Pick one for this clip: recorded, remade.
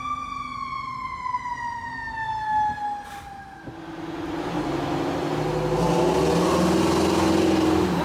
recorded